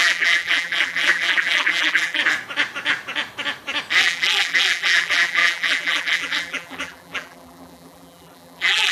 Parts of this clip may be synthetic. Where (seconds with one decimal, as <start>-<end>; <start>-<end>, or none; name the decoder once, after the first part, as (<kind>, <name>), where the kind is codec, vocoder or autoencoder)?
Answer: 0.0-2.2 (vocoder, BigVGAN v2); 4.0-8.9